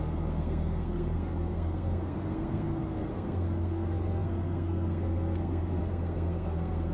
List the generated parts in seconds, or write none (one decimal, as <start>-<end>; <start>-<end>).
0.0-6.9